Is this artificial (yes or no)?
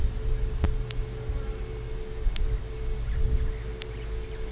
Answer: no